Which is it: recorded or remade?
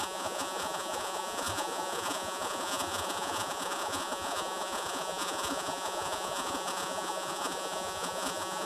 remade